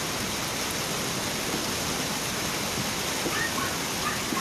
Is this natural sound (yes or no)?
yes